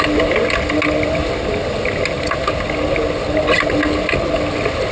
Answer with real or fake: real